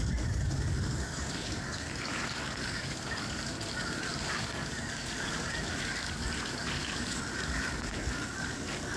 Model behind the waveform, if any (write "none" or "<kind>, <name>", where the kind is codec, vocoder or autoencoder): codec, DAC